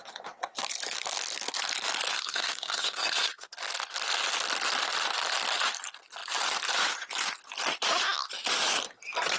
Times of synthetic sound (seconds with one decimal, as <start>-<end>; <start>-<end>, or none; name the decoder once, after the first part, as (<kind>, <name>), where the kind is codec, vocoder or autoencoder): 2.1-3.6 (codec, SNAC)